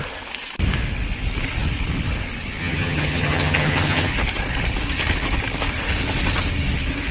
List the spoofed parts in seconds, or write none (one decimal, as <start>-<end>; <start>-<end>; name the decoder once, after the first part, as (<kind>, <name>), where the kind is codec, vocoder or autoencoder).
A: 2.6-4.1 (vocoder, HiFi-GAN)

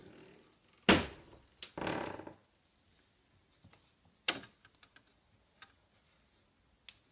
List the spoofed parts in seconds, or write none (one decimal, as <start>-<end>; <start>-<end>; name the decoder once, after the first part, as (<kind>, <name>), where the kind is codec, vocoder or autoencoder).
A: none

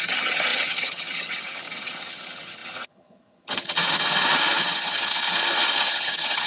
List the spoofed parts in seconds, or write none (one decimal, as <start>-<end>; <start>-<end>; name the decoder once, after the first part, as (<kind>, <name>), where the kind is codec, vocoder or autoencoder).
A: 0.0-6.5 (vocoder, HiFi-GAN)

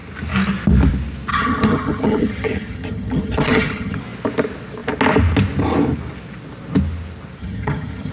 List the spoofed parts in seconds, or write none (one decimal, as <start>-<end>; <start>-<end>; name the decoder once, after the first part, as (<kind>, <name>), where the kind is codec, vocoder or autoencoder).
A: 1.3-4.0 (vocoder, HiFi-GAN); 7.4-8.1